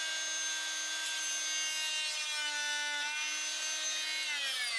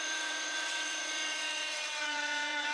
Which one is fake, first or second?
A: second